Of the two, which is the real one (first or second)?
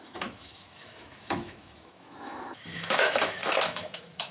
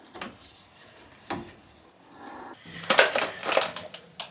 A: second